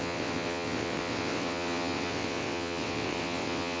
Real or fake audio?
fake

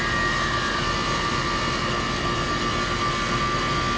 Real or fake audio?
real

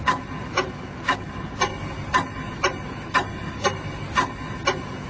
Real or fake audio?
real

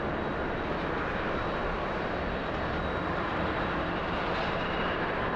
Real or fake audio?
real